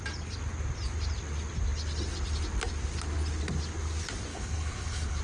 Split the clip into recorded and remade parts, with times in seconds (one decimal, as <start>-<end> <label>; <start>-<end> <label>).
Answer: 0.0-4.3 recorded; 4.3-5.2 remade